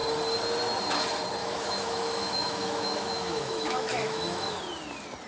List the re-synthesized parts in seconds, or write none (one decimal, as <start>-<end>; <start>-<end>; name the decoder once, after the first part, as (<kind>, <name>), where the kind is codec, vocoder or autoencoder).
1.4-4.6 (autoencoder, DAC-VAE)